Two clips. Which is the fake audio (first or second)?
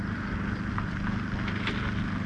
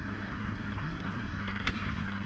second